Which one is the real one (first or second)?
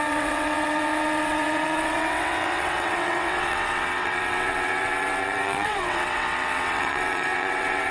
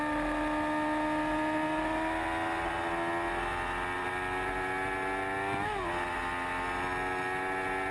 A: second